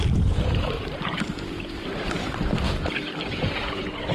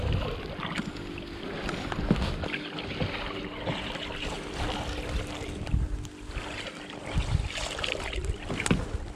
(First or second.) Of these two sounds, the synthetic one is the first